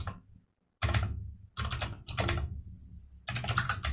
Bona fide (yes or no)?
yes